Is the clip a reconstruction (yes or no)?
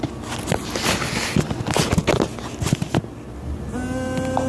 no